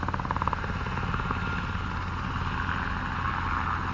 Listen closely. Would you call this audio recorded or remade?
recorded